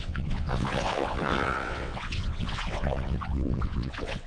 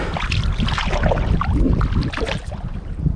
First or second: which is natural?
second